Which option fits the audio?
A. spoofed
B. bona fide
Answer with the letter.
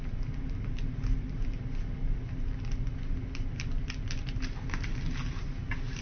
B